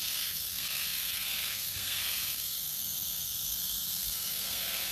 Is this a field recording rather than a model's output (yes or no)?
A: no